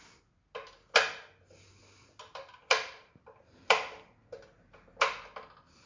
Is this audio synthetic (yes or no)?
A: no